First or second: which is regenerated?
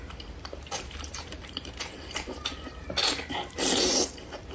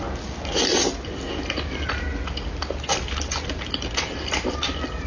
first